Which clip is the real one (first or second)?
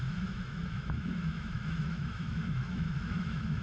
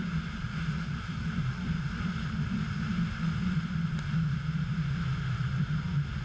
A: second